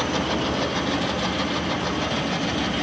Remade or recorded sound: recorded